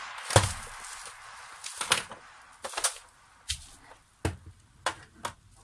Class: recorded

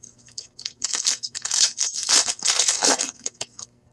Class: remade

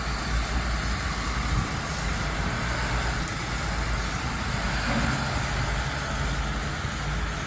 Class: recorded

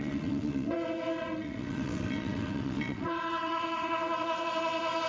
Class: remade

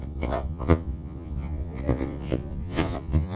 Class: remade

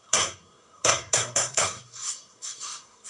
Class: remade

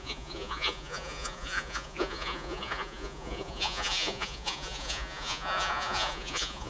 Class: remade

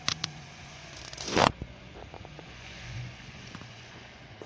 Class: remade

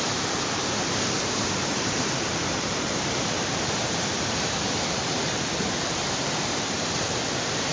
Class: remade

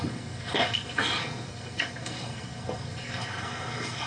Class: remade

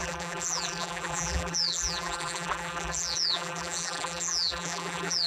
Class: remade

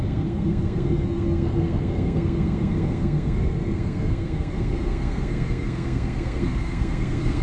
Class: remade